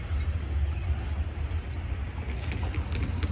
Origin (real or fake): real